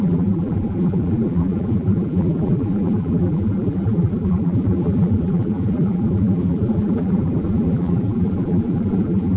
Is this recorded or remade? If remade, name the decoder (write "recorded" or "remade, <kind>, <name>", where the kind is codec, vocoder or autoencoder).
remade, vocoder, BigVGAN v2